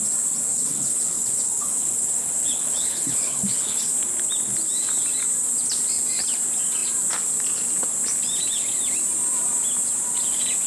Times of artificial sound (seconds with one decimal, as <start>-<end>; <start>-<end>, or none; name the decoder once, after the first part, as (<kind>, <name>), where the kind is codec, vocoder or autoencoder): 0.5-3.9 (codec, HILCodec)